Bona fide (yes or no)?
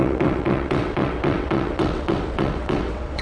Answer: no